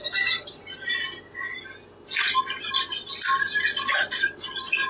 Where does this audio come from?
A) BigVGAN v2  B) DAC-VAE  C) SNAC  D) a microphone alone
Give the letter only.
D